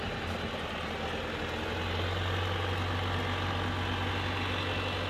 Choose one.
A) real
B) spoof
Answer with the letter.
A